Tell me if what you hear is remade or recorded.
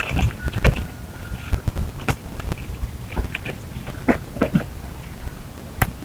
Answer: recorded